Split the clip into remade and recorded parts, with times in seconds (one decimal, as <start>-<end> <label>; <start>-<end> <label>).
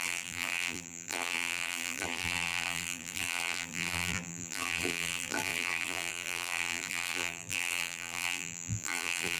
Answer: 0.0-9.4 remade